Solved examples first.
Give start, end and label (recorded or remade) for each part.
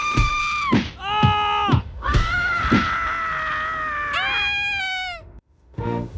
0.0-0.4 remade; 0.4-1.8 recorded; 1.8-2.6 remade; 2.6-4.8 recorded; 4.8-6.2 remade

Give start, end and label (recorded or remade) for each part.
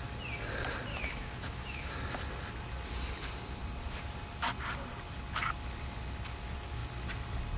0.0-0.9 recorded; 0.9-1.9 remade; 1.9-7.6 recorded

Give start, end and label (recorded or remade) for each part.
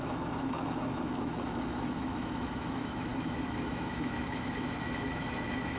0.0-5.8 remade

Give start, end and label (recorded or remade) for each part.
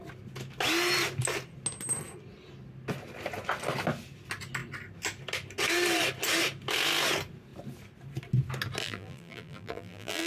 0.0-8.8 recorded; 8.8-10.3 remade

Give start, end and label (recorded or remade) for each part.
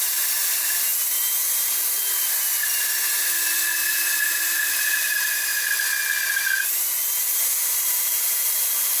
0.0-3.8 recorded; 3.8-5.6 remade; 5.6-7.4 recorded; 7.4-9.0 remade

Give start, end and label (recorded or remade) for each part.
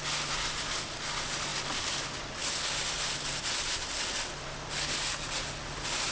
0.0-6.1 recorded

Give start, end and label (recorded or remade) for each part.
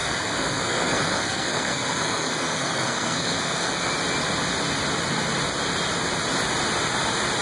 0.0-3.9 remade; 3.9-7.4 recorded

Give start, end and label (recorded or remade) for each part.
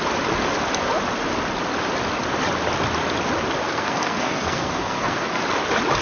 0.0-3.6 recorded; 3.6-5.4 remade; 5.4-6.0 recorded